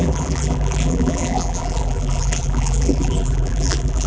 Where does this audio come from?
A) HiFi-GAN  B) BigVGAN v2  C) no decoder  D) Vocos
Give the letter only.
B